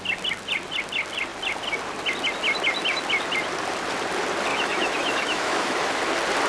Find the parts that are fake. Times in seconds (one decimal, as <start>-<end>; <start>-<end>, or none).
4.5-6.0